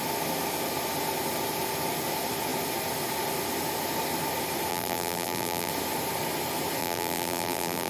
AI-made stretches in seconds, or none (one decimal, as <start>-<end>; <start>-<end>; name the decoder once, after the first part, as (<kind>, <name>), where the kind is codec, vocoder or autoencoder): 4.7-5.7 (vocoder, BigVGAN v2); 6.8-7.9